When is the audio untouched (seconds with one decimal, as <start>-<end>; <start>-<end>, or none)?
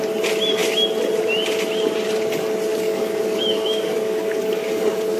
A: 0.0-2.7